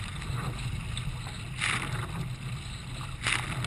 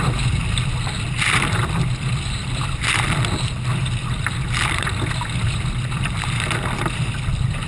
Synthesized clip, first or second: second